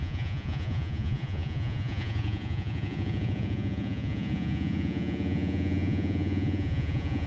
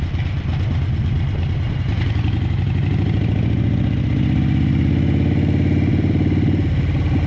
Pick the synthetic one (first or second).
first